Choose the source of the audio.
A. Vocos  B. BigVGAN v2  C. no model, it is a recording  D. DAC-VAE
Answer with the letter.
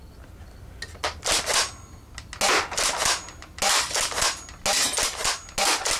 C